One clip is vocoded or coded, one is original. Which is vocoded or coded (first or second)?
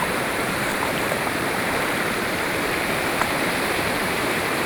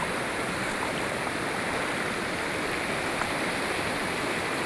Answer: first